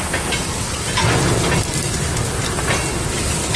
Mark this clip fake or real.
real